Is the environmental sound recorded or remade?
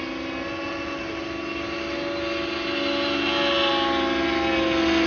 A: recorded